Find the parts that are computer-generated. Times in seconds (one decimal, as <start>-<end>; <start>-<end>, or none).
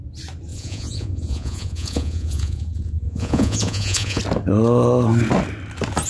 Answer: 0.5-4.2